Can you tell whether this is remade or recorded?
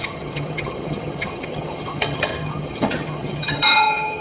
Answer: remade